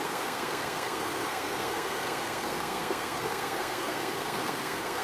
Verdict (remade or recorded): remade